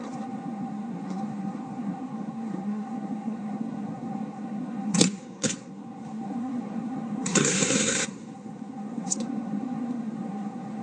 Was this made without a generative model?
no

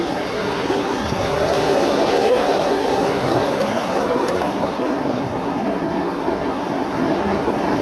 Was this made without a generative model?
no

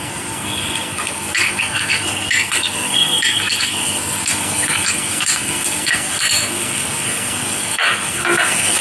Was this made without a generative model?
no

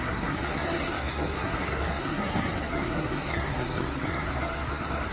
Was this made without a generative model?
no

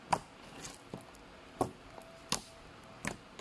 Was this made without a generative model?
yes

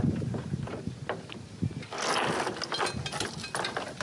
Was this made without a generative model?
yes